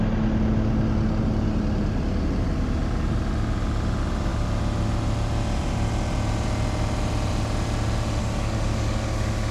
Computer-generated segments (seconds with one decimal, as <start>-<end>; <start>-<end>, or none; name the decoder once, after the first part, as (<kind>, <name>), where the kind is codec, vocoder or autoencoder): 8.2-9.5 (codec, DAC)